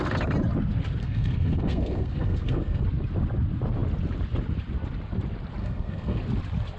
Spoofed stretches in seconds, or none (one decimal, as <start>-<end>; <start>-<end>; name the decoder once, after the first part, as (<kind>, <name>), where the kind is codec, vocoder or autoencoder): 1.0-2.8 (codec, SNAC); 5.6-6.2